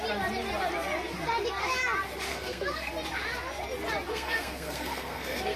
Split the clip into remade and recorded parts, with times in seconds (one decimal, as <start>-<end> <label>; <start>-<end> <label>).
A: 0.0-2.3 recorded; 2.3-2.9 remade; 2.9-4.1 recorded; 4.1-5.6 remade